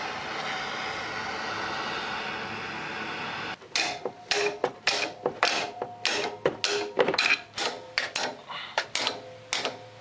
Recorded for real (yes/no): yes